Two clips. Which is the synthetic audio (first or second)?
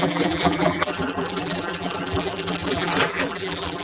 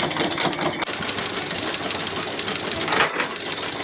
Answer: first